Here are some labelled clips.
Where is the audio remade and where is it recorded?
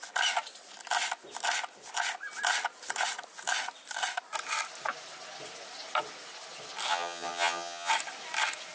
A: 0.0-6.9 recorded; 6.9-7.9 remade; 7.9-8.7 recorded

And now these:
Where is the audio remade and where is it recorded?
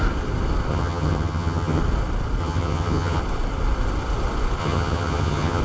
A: 0.0-0.7 recorded; 0.7-1.8 remade; 1.8-2.4 recorded; 2.4-3.2 remade; 3.2-4.6 recorded; 4.6-5.6 remade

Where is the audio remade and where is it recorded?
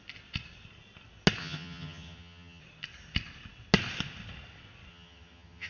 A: 0.0-1.4 recorded; 1.4-2.6 remade; 2.6-4.9 recorded; 4.9-5.7 remade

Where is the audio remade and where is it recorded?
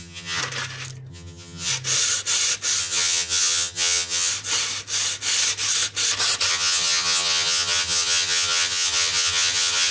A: 0.0-0.4 remade; 0.4-1.1 recorded; 1.1-1.7 remade; 1.7-2.8 recorded; 2.8-4.3 remade; 4.3-6.5 recorded; 6.5-9.9 remade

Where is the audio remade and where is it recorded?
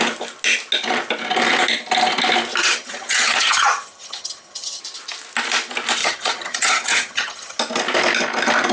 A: 0.0-2.6 recorded; 2.6-4.8 remade; 4.8-6.0 recorded; 6.0-7.6 remade; 7.6-8.7 recorded